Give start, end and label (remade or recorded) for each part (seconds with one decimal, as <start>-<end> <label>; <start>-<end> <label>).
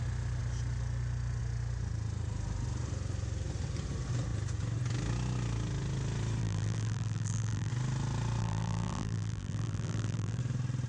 0.0-6.4 recorded; 6.4-7.7 remade; 7.7-8.4 recorded; 8.4-10.4 remade; 10.4-10.9 recorded